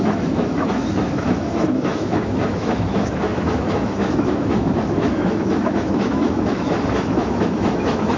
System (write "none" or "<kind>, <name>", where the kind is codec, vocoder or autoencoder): autoencoder, DAC-VAE